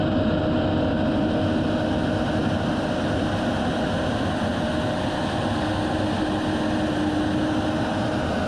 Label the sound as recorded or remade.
recorded